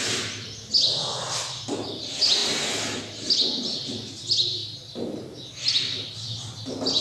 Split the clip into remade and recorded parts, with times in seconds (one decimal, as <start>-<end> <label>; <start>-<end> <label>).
0.0-7.0 recorded